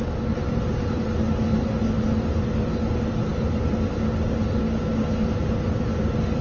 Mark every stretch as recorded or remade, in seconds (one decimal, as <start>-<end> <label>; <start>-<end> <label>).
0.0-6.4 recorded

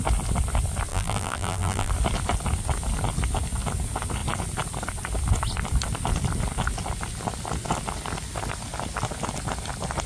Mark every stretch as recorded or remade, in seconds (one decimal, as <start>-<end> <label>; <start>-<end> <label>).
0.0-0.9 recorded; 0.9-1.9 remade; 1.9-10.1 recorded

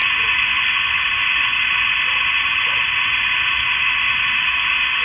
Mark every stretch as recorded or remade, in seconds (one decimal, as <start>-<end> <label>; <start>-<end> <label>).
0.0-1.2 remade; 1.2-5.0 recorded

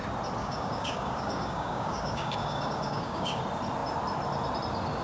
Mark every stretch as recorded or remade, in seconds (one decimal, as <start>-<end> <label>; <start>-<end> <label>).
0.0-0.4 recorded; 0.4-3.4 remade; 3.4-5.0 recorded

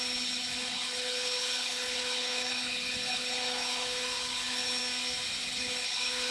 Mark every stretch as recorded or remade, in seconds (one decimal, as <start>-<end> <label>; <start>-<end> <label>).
0.0-4.8 remade; 4.8-5.5 recorded; 5.5-6.3 remade